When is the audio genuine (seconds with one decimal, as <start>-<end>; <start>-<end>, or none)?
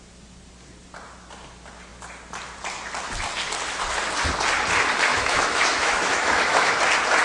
0.0-5.1; 6.8-7.2